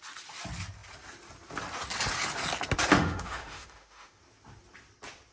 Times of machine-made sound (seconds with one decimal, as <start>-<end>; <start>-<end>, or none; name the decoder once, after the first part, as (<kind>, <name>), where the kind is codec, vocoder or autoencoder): 2.9-4.2 (autoencoder, DAC-VAE)